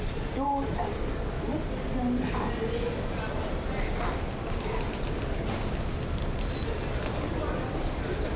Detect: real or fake real